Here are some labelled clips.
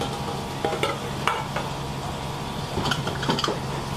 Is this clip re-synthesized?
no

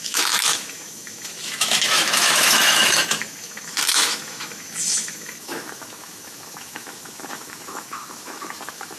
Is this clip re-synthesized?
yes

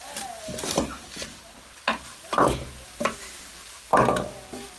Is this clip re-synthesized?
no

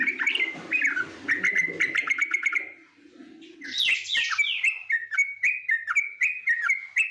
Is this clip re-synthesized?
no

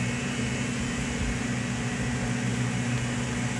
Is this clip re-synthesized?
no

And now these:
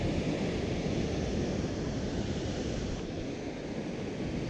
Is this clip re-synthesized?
no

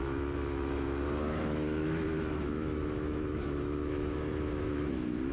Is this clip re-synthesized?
yes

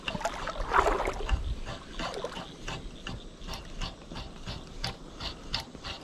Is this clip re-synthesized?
no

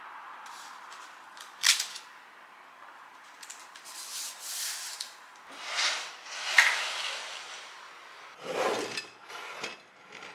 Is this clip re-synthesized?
no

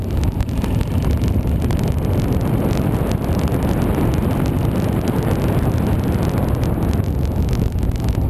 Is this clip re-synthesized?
no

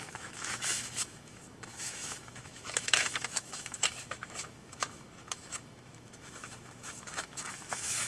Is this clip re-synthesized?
yes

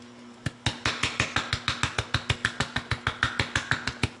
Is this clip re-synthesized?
no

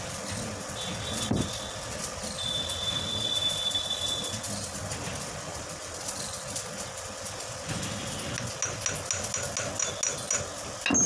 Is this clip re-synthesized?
no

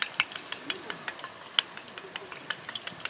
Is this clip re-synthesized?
no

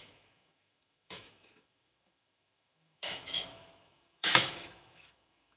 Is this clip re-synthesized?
yes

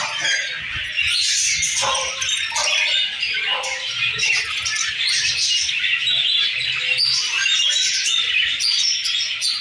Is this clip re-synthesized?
no